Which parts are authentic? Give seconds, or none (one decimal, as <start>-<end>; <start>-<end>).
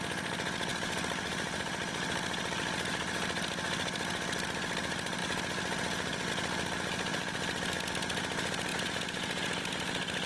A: 0.0-8.7; 9.6-10.3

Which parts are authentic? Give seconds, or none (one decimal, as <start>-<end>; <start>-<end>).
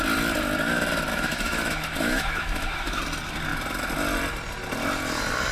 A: 0.0-1.1; 3.0-5.5